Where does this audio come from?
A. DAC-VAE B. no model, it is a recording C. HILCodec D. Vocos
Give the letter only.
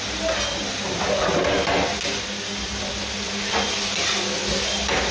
B